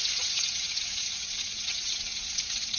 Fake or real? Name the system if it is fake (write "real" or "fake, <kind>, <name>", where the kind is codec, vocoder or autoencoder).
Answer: fake, vocoder, WaveNeXt